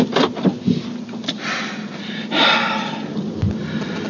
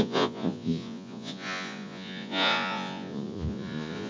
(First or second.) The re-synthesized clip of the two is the second